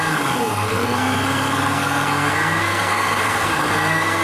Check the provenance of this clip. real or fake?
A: fake